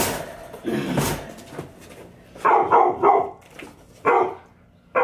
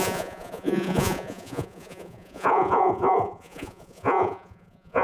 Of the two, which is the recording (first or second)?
first